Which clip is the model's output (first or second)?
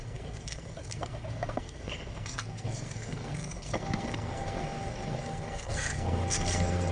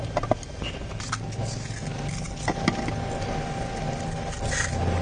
first